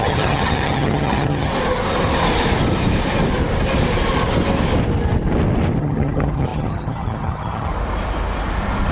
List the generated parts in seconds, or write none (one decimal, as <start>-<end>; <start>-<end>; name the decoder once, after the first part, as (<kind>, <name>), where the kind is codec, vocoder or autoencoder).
0.0-1.5 (vocoder, HiFi-GAN); 5.8-7.7